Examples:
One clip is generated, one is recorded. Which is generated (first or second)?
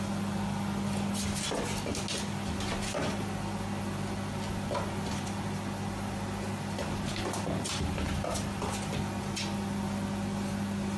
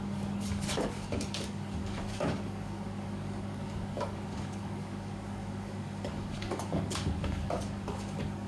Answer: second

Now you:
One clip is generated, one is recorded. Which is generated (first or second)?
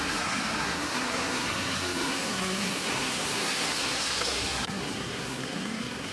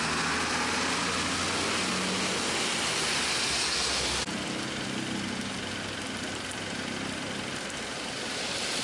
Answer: first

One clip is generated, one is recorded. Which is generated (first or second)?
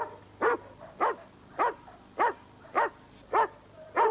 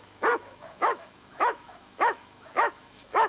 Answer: second